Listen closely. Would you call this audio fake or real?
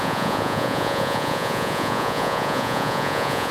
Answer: fake